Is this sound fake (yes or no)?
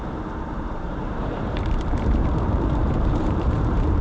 yes